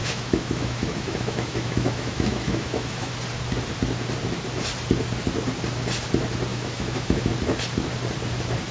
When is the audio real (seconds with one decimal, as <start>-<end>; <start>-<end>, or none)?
3.1-6.5; 7.3-8.7